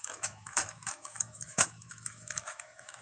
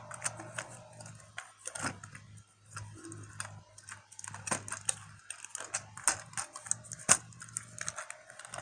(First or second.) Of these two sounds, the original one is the second